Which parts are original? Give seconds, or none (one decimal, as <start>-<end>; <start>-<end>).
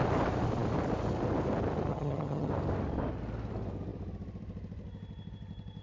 0.0-1.9; 2.5-5.8